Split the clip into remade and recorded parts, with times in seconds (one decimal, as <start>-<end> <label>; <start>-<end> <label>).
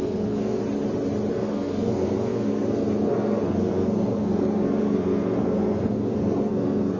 0.0-0.6 remade; 0.6-1.3 recorded; 1.3-7.0 remade